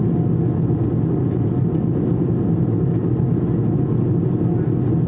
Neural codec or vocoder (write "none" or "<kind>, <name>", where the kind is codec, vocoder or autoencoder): none